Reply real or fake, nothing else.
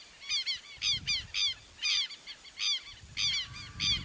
real